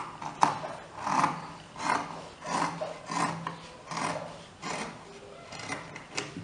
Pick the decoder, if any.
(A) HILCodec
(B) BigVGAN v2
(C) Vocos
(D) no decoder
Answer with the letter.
D